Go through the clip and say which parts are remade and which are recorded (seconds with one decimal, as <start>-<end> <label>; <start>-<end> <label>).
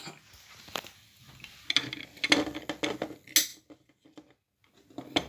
0.0-5.3 recorded